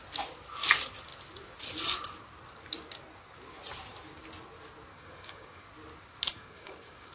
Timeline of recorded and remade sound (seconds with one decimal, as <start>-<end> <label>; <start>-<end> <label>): 0.0-4.9 recorded; 4.9-5.7 remade; 5.7-6.3 recorded; 6.3-7.1 remade